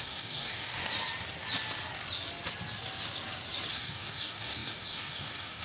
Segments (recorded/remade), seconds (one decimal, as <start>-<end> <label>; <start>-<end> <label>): 0.0-0.8 remade; 0.8-3.7 recorded; 3.7-5.6 remade